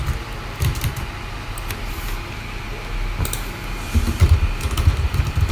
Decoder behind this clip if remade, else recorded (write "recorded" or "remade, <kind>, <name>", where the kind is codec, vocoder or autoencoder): recorded